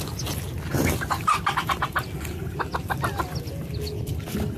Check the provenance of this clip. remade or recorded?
recorded